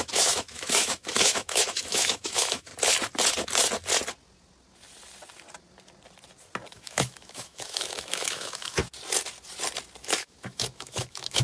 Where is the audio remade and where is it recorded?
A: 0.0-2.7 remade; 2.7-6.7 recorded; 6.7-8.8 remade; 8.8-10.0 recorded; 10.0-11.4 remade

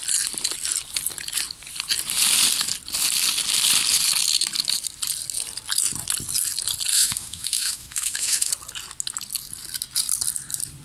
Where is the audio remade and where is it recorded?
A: 0.0-6.9 recorded; 6.9-8.5 remade; 8.5-10.8 recorded